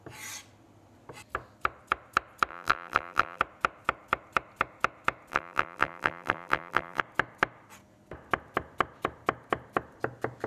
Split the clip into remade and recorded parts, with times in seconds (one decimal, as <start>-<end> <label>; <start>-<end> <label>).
0.0-2.5 recorded; 2.5-3.4 remade; 3.4-5.3 recorded; 5.3-7.0 remade; 7.0-10.5 recorded